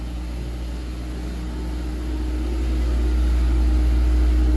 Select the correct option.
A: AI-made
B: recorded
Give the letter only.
B